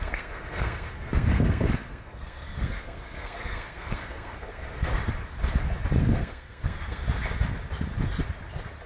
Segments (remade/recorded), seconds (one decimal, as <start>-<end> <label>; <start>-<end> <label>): 0.0-5.0 remade; 5.0-6.0 recorded; 6.0-7.0 remade; 7.0-8.9 recorded